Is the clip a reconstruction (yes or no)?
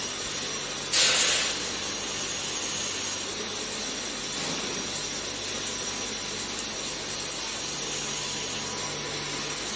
no